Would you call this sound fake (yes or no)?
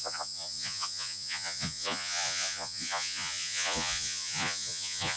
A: yes